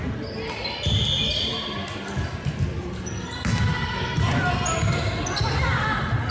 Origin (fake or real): real